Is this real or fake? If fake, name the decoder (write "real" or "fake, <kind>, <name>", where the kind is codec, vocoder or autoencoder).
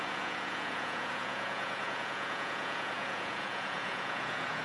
fake, vocoder, Vocos